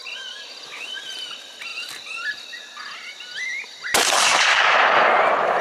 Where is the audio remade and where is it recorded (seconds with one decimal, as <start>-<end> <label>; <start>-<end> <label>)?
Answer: 0.0-5.6 recorded